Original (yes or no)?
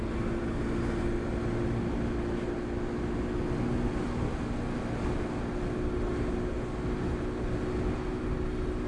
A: yes